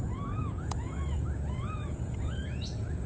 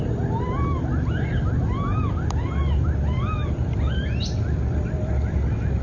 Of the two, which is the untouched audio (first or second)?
second